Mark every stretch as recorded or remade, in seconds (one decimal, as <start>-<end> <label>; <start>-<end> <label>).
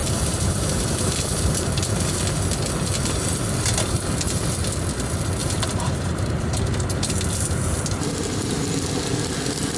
0.0-1.7 remade; 1.7-5.4 recorded; 5.4-6.6 remade; 6.6-9.8 recorded